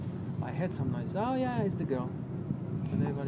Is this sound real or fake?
real